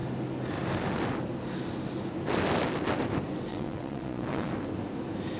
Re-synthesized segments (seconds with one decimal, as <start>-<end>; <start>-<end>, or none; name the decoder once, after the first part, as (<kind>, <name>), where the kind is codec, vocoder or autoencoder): 3.5-4.5 (vocoder, WaveNeXt)